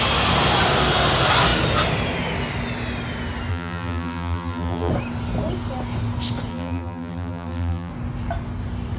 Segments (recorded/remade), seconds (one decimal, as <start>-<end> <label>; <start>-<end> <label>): 0.0-3.5 recorded; 3.5-4.9 remade; 4.9-6.5 recorded; 6.5-7.9 remade; 7.9-9.0 recorded